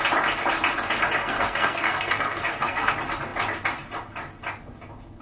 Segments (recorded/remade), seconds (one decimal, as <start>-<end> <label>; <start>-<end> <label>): 0.0-1.2 recorded; 1.2-2.9 remade; 2.9-5.2 recorded